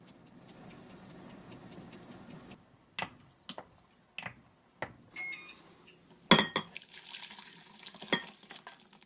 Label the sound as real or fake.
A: real